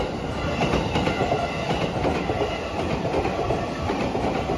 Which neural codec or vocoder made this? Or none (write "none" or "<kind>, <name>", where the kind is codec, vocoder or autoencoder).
none